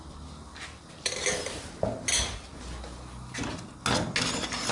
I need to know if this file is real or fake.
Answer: real